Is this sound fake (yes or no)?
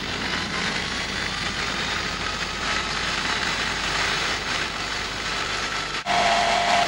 yes